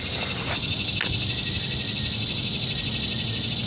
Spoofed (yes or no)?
no